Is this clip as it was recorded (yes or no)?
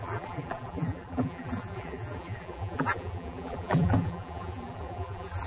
no